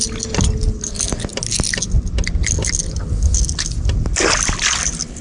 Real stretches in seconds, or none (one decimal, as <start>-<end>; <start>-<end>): 0.0-5.2